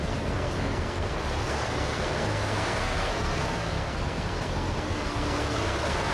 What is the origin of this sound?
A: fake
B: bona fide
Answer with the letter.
A